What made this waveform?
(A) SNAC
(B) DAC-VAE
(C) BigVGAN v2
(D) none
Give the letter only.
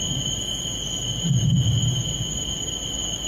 D